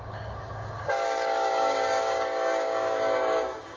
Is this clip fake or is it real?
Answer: fake